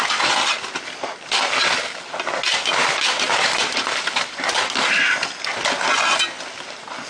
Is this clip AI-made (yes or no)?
no